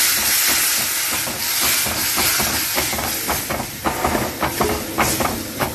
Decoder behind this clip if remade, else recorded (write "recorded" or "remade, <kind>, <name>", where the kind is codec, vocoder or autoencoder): recorded